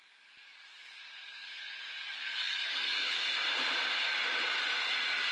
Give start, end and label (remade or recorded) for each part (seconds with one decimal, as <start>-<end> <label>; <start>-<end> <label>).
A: 0.0-3.1 remade; 3.1-5.3 recorded